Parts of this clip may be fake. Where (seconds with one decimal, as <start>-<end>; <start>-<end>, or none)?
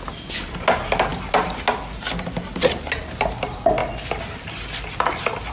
none